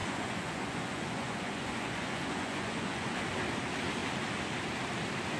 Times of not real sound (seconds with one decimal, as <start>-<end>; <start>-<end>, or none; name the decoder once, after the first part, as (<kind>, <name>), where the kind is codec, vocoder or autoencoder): 0.0-3.2 (vocoder, Vocos)